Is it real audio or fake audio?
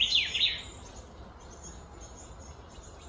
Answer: real